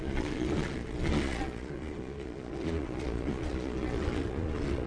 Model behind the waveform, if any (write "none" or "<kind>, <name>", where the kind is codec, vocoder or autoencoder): vocoder, Vocos